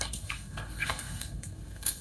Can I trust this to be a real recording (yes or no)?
no